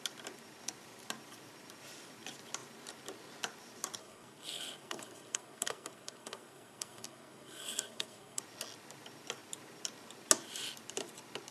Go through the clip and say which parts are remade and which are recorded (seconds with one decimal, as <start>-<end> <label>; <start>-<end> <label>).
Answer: 0.0-4.0 recorded; 4.0-8.4 remade; 8.4-11.5 recorded